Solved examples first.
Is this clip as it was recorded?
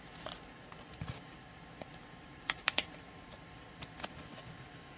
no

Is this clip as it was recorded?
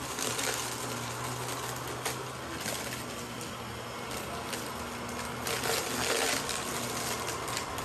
yes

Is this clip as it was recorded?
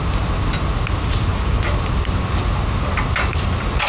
yes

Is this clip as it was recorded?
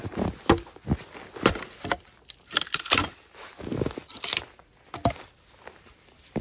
yes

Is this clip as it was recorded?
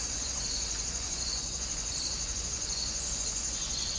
no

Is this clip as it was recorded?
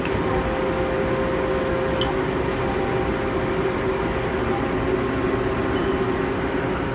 yes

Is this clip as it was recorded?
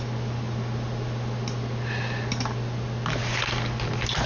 yes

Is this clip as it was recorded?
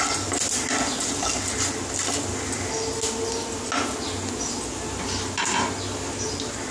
yes